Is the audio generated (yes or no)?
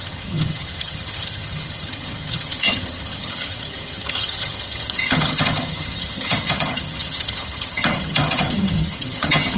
yes